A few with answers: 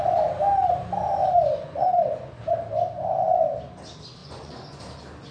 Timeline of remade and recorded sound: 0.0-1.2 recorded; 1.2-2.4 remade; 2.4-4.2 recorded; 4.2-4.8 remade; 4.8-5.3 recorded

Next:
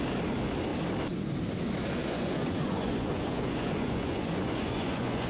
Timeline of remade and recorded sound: 0.0-2.0 recorded; 2.0-5.3 remade

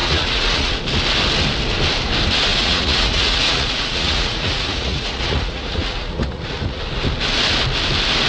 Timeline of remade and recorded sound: 0.0-0.7 remade; 0.7-2.5 recorded; 2.5-6.8 remade; 6.8-8.3 recorded